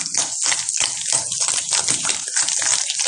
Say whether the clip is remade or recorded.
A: recorded